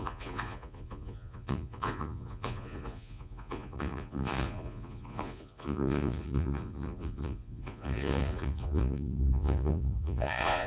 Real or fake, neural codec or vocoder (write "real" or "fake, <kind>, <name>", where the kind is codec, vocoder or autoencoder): fake, vocoder, Vocos